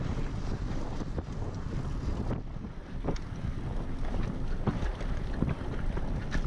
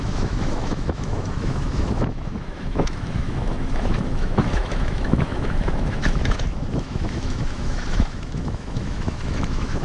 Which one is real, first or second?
first